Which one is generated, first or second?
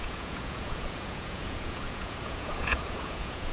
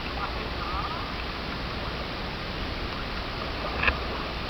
first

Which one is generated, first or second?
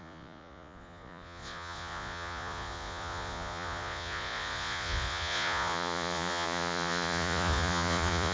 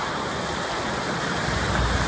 first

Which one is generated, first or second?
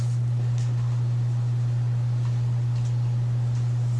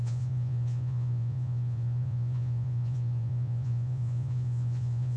second